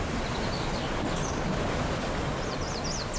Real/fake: real